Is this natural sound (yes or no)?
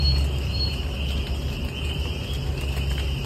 yes